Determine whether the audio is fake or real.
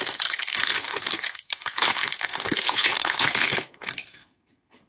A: fake